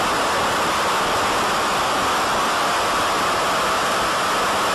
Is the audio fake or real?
fake